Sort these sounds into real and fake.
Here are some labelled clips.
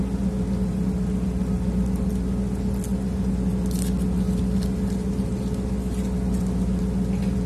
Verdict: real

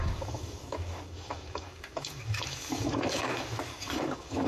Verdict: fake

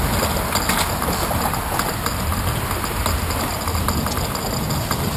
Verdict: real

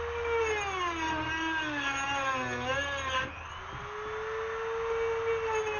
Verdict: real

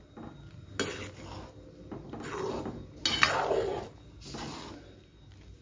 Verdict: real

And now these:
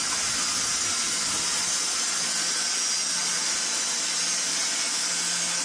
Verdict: real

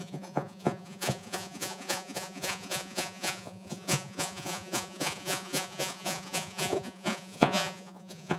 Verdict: fake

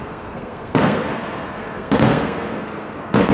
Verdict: fake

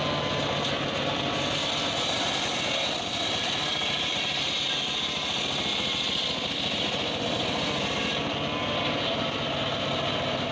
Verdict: real